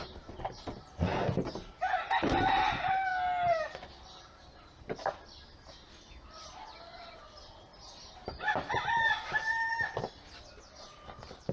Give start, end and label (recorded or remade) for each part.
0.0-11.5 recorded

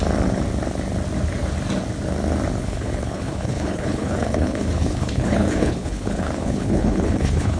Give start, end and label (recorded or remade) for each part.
0.0-2.6 recorded; 2.6-7.6 remade

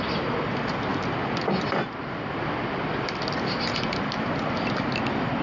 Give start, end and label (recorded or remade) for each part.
0.0-5.4 recorded

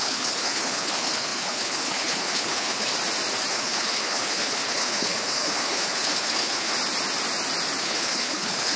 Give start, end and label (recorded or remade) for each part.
0.0-2.9 remade; 2.9-3.5 recorded; 3.5-6.7 remade; 6.7-7.8 recorded; 7.8-8.8 remade

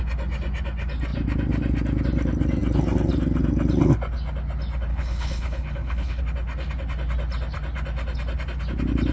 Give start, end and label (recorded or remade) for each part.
0.0-4.9 recorded; 4.9-6.2 remade; 6.2-9.1 recorded